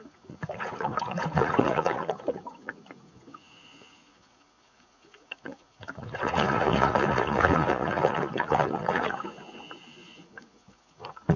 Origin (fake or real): fake